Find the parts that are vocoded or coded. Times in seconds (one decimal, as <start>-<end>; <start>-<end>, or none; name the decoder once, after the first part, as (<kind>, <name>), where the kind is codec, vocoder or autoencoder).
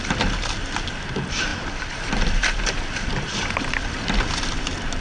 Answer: none